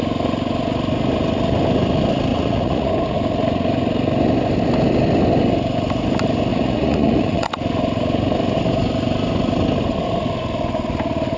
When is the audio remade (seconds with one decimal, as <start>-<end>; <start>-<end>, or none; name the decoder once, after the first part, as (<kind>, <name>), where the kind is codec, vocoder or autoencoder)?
2.3-2.9 (vocoder, Vocos); 6.5-7.5